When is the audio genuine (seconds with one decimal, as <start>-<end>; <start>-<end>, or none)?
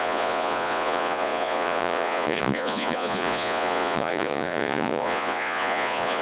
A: none